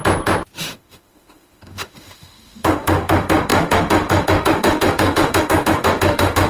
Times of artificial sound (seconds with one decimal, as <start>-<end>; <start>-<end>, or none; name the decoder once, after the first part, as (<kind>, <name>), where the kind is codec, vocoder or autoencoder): 0.6-6.5 (autoencoder, DAC-VAE)